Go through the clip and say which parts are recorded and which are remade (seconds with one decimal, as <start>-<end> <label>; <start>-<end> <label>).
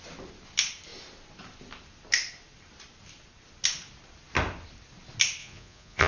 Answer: 0.0-5.4 recorded; 5.4-6.1 remade